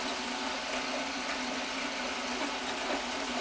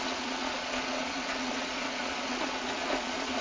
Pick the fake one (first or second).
second